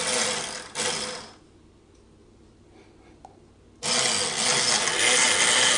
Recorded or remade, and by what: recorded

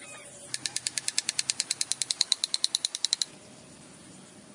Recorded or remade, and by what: remade, vocoder, BigVGAN v2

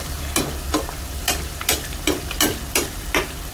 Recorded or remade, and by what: recorded